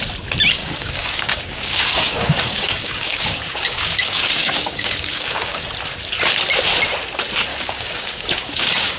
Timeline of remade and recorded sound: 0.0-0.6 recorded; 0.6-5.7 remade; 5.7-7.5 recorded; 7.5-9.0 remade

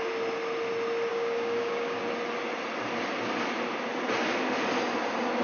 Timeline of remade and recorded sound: 0.0-1.1 recorded; 1.1-2.0 remade; 2.0-5.4 recorded

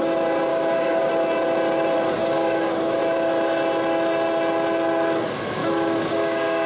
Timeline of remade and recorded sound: 0.0-0.5 recorded; 0.5-1.1 remade; 1.1-2.2 recorded; 2.2-3.0 remade; 3.0-5.6 recorded; 5.6-6.7 remade

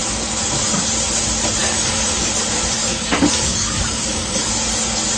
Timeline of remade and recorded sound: 0.0-1.6 recorded; 1.6-2.3 remade; 2.3-2.8 recorded; 2.8-4.5 remade; 4.5-5.2 recorded

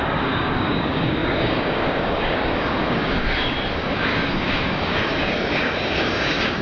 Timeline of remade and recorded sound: 0.0-6.6 remade